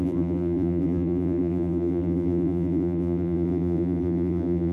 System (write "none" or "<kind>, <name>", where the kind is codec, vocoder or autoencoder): vocoder, BigVGAN v2